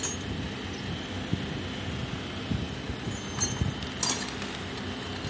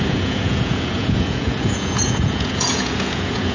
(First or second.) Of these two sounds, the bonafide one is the first